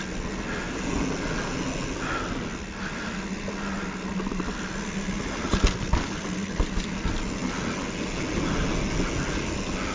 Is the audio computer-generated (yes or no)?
no